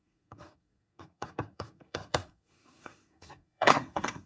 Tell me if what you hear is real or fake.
fake